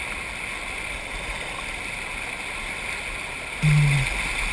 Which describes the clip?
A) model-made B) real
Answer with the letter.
B